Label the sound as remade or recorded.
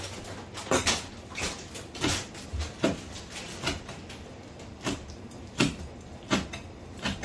recorded